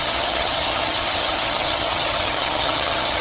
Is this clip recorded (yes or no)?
no